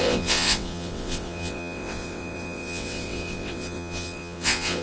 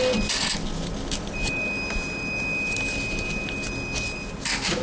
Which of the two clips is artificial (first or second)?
first